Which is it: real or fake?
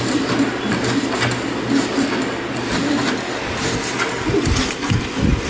real